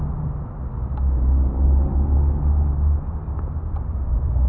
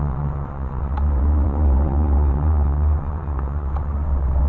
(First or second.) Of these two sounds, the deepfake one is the second